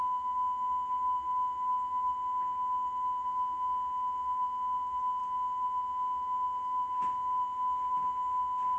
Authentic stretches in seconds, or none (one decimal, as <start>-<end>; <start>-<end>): 0.0-8.8